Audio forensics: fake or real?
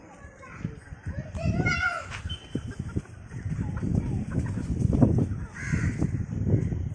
real